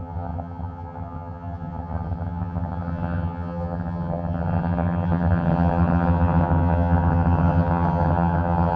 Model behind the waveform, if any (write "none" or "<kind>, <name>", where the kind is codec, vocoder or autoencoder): vocoder, HiFi-GAN